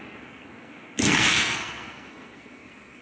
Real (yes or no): no